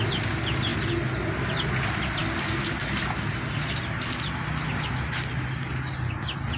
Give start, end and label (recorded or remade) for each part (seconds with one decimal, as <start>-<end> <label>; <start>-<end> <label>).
0.0-6.6 recorded